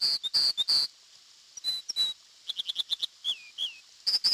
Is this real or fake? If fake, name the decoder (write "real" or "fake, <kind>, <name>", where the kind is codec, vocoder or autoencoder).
real